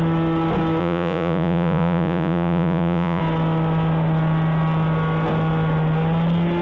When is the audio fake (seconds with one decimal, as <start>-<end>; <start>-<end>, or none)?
0.8-3.2

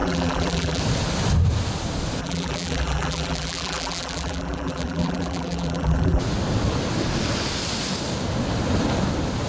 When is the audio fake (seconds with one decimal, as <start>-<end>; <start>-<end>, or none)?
0.0-0.8; 2.2-6.2